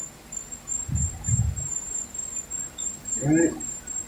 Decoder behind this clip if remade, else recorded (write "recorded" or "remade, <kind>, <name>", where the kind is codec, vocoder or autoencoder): recorded